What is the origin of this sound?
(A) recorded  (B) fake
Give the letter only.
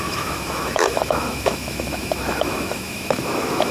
B